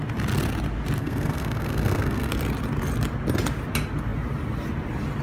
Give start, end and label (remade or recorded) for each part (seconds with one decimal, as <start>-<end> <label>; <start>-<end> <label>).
0.0-1.0 recorded; 1.0-2.3 remade; 2.3-5.2 recorded